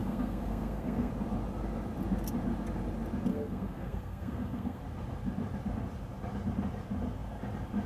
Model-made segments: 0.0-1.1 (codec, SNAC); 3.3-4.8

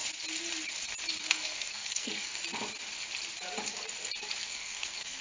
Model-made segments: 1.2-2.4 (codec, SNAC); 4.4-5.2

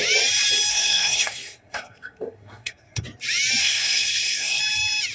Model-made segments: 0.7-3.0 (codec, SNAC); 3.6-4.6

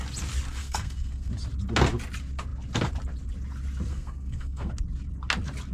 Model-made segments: 0.6-1.3 (codec, SNAC); 3.9-4.7

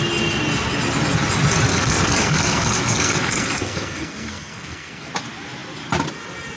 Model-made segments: 1.7-5.1 (codec, SNAC)

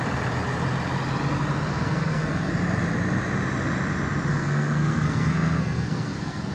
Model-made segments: 1.7-2.5 (codec, SNAC); 4.3-6.5

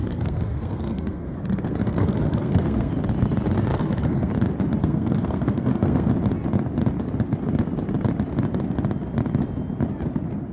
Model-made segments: 0.0-2.9 (codec, SNAC); 3.7-4.3; 4.8-6.1

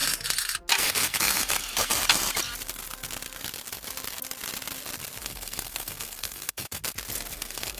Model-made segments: 0.8-1.9 (codec, SNAC); 5.2-6.8; 7.3-7.8